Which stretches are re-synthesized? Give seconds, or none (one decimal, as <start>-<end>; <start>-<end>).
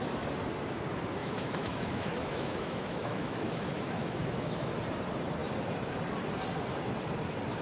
1.2-4.7